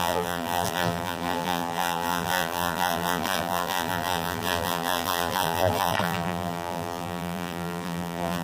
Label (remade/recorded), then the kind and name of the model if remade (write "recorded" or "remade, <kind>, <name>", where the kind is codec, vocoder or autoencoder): remade, vocoder, BigVGAN v2